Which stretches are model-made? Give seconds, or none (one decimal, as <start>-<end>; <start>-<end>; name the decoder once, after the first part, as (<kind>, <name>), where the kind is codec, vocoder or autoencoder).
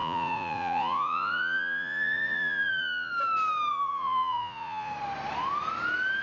0.0-3.1 (vocoder, Vocos); 3.7-4.9